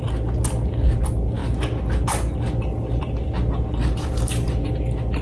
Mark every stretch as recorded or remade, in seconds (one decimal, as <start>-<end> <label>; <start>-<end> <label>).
0.0-3.8 recorded; 3.8-4.7 remade; 4.7-5.2 recorded